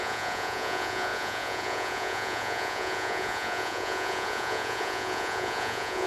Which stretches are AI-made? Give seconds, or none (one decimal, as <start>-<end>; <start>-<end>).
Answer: 0.0-6.1